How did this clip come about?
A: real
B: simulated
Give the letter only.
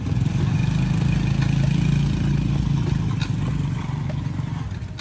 A